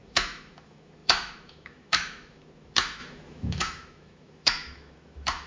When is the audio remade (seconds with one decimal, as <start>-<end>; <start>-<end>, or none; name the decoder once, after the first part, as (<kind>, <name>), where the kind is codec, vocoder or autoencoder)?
0.0-5.5 (autoencoder, DAC-VAE)